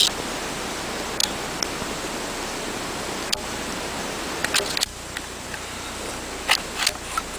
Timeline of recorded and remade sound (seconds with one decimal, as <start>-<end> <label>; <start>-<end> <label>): 0.0-7.4 recorded